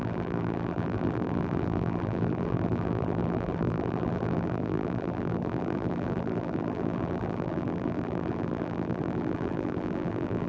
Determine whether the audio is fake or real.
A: fake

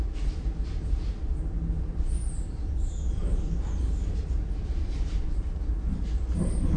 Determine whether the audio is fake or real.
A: fake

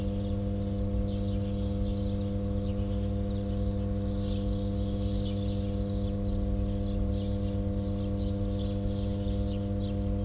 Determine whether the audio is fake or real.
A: real